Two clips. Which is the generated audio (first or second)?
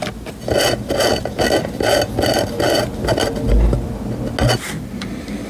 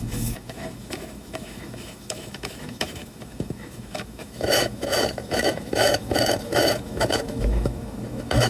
second